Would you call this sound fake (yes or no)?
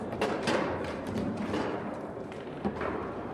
yes